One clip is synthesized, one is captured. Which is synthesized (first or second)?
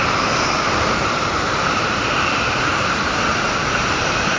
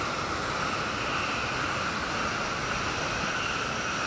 first